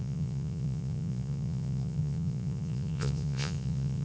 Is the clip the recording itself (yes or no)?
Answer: no